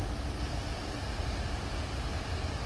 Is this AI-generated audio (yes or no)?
no